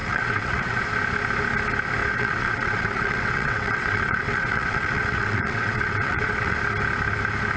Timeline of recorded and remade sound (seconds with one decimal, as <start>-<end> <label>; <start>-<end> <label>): 0.0-0.8 remade; 0.8-2.0 recorded; 2.0-6.6 remade; 6.6-7.6 recorded

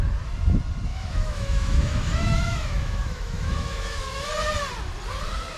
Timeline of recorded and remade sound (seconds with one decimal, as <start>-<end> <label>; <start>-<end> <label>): 0.0-0.9 recorded; 0.9-4.3 remade; 4.3-5.6 recorded

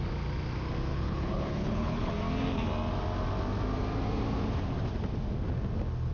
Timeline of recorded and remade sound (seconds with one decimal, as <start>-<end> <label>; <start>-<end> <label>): 0.0-0.9 recorded; 0.9-2.1 remade; 2.1-6.1 recorded

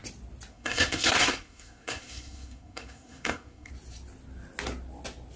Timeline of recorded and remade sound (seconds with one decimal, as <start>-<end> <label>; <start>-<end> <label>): 0.0-0.5 recorded; 0.5-3.7 remade; 3.7-5.4 recorded